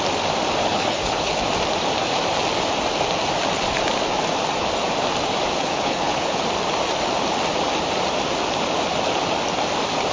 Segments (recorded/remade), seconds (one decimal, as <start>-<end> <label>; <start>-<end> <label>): 0.0-0.6 recorded; 0.6-1.4 remade; 1.4-5.6 recorded; 5.6-6.4 remade; 6.4-10.1 recorded